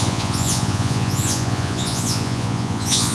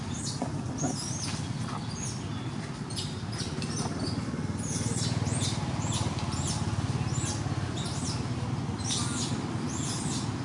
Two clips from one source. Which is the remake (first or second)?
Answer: first